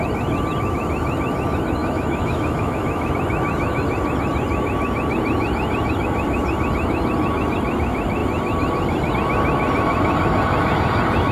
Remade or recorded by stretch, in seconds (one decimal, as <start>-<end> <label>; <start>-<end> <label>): 0.0-1.8 recorded; 1.8-3.1 remade; 3.1-11.3 recorded